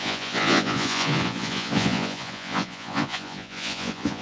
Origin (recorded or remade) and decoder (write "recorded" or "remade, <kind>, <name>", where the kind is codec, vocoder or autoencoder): remade, vocoder, Vocos